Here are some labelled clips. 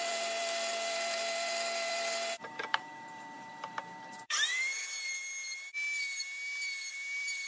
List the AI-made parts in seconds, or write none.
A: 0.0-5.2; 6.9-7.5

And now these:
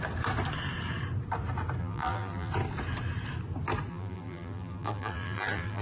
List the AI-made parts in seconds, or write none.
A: 1.8-2.5; 3.9-5.8

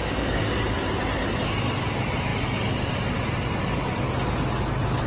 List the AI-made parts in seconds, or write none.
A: 0.0-0.5

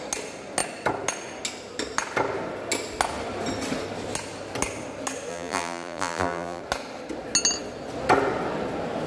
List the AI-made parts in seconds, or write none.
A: 5.3-6.6